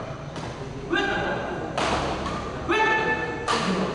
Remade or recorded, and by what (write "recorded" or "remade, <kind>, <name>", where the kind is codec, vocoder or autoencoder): recorded